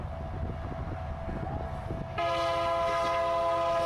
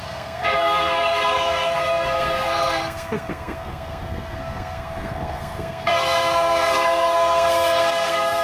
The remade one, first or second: second